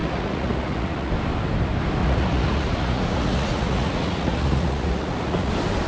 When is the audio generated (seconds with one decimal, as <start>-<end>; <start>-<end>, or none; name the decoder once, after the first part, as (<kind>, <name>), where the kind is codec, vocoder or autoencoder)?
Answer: 0.0-1.1 (vocoder, Vocos); 2.0-5.5